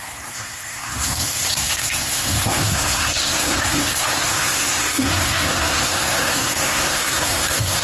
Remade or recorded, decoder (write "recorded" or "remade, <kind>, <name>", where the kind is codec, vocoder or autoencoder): remade, codec, SNAC